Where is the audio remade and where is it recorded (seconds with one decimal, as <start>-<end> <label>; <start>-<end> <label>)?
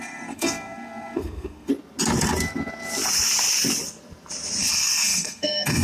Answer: 0.0-1.7 remade; 1.7-4.6 recorded; 4.6-5.8 remade